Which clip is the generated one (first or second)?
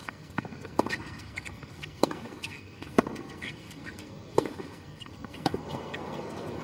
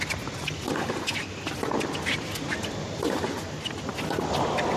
first